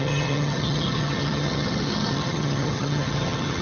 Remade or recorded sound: remade